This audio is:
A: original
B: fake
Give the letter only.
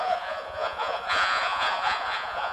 B